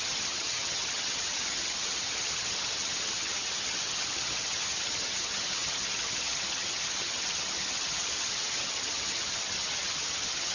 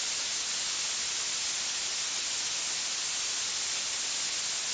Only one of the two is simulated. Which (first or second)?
first